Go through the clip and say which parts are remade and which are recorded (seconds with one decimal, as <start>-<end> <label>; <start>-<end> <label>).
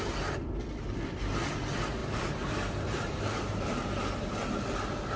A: 0.0-2.0 recorded; 2.0-4.0 remade; 4.0-5.2 recorded